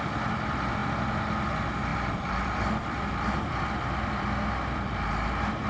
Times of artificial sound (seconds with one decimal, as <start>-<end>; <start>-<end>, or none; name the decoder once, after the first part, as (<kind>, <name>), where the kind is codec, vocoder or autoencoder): 1.9-5.3 (vocoder, BigVGAN v2)

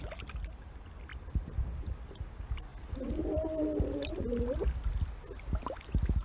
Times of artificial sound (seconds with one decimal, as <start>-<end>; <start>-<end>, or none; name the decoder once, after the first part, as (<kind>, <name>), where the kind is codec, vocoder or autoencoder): none